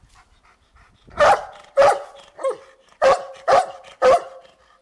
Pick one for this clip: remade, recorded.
recorded